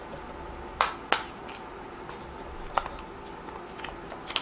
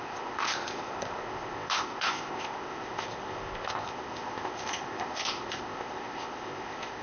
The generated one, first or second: second